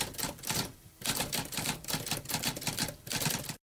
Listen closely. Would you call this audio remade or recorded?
remade